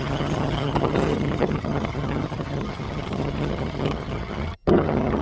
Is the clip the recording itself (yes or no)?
no